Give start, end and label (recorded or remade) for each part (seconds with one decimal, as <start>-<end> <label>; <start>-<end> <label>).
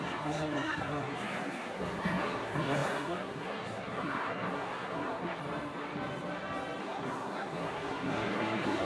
0.0-5.4 remade; 5.4-6.8 recorded; 6.8-8.8 remade